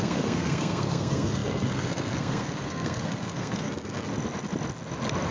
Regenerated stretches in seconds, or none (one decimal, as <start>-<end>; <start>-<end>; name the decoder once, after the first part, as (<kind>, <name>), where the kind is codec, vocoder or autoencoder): 0.0-4.1 (codec, SNAC)